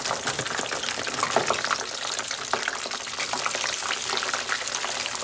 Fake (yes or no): no